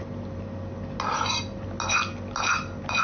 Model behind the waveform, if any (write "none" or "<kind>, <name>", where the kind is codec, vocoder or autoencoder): none